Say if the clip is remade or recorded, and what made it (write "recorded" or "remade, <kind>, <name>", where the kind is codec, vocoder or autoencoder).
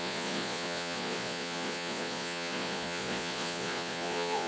remade, vocoder, Vocos